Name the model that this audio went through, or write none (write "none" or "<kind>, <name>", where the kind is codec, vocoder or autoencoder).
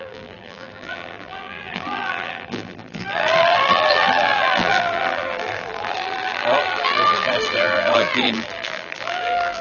vocoder, BigVGAN v2